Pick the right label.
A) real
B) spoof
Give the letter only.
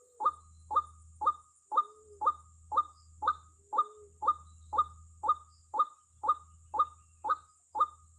A